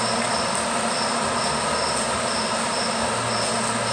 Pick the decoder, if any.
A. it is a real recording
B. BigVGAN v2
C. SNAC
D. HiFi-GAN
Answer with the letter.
A